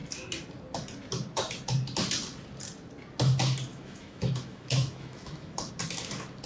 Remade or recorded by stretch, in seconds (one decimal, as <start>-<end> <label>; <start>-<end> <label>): 0.0-3.7 recorded; 3.7-5.7 remade; 5.7-6.5 recorded